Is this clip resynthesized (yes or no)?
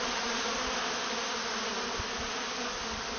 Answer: no